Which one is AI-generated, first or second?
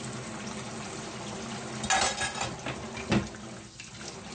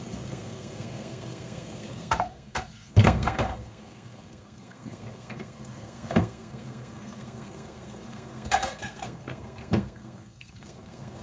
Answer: second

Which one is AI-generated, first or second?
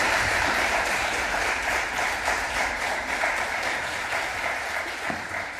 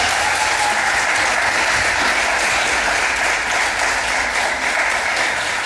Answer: first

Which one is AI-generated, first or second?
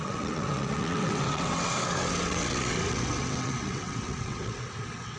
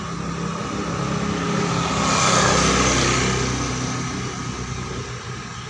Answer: first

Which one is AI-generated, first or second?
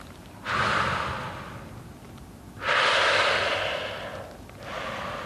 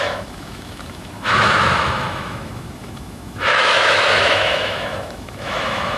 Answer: second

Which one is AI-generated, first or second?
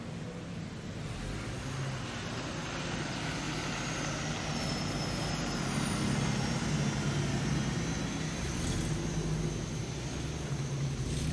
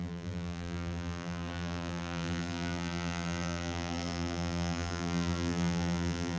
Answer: second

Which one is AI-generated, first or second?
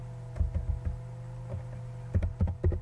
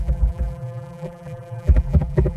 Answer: second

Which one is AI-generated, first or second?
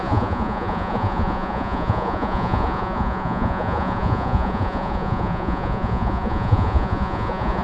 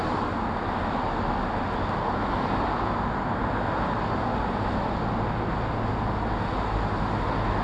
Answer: first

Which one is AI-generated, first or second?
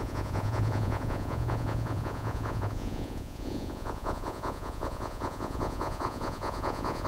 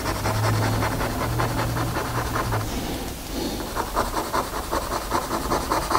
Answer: first